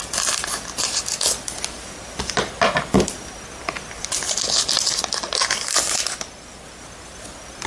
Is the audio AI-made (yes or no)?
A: no